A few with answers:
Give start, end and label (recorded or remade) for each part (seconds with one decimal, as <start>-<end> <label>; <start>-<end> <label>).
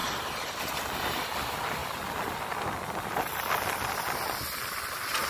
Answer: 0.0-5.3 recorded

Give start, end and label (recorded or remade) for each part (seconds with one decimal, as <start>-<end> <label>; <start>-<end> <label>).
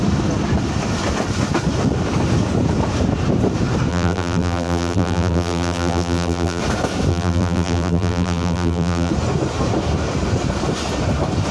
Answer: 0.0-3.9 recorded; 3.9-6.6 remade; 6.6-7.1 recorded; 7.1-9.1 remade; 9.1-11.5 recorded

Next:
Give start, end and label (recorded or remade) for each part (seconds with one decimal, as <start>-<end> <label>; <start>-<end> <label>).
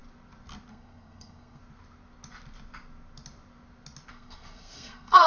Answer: 0.0-0.7 recorded; 0.7-1.6 remade; 1.6-4.1 recorded; 4.1-5.3 remade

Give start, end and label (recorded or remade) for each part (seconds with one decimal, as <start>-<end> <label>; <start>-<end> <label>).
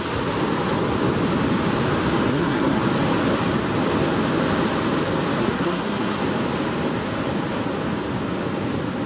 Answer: 0.0-2.3 recorded; 2.3-2.8 remade; 2.8-5.4 recorded; 5.4-6.2 remade; 6.2-9.1 recorded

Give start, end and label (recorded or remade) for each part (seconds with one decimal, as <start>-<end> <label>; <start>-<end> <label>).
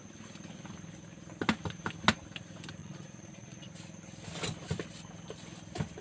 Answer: 0.0-2.8 recorded; 2.8-3.7 remade; 3.7-6.0 recorded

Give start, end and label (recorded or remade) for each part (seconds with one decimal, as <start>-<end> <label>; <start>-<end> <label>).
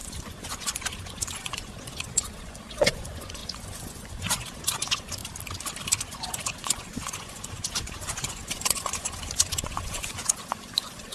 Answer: 0.0-5.2 remade; 5.2-6.0 recorded; 6.0-11.1 remade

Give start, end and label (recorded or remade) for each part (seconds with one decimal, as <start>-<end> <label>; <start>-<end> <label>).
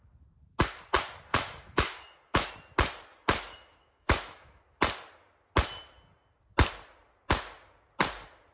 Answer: 0.0-1.3 recorded; 1.3-2.5 remade; 2.5-3.1 recorded; 3.1-4.6 remade; 4.6-8.5 recorded